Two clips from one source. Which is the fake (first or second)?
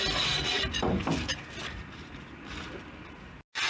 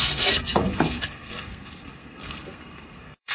second